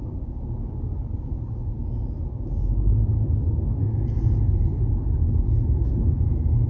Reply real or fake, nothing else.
real